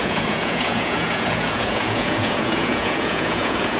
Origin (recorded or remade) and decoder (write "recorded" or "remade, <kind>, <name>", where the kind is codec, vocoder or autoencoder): remade, vocoder, Vocos